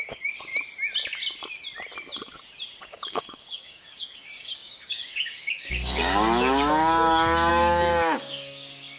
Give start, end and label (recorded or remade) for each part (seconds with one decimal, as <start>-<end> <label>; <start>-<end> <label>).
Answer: 0.0-0.5 remade; 0.5-2.8 recorded; 2.8-9.0 remade